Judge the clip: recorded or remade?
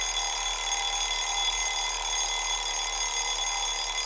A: recorded